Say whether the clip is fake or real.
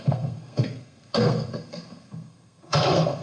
fake